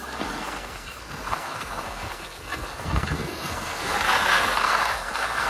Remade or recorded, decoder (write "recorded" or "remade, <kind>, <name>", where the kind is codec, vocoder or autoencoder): remade, codec, SNAC